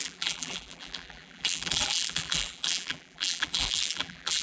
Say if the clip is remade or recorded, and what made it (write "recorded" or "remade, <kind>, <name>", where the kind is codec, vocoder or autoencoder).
remade, vocoder, BigVGAN v2